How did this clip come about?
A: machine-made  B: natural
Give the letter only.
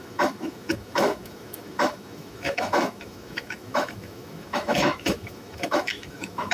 A